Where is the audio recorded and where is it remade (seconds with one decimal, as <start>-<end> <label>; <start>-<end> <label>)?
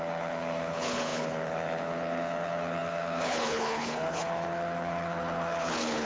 0.0-6.0 remade